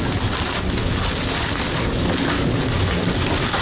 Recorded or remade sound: recorded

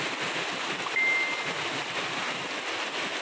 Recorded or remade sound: recorded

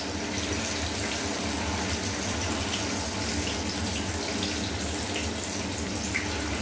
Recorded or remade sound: recorded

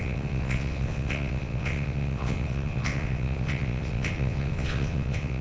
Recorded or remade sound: remade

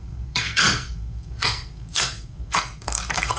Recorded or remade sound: remade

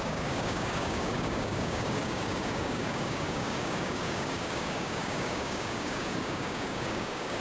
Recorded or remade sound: remade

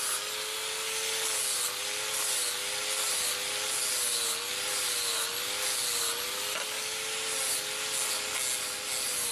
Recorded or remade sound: recorded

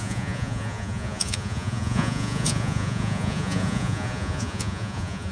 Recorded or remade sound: remade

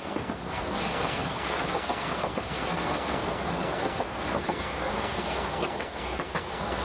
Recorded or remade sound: remade